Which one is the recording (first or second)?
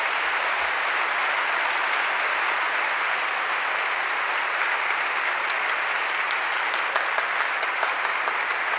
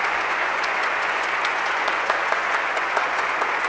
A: first